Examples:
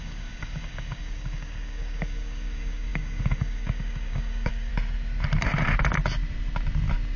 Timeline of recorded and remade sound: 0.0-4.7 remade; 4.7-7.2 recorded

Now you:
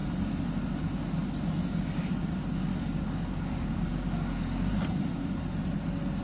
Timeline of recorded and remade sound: 0.0-2.7 recorded; 2.7-4.7 remade; 4.7-6.2 recorded